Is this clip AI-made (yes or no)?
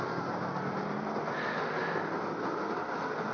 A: no